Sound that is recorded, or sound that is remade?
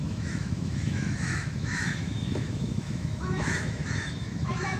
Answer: remade